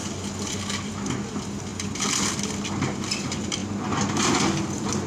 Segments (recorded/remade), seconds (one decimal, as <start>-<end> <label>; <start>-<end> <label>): 0.0-5.1 recorded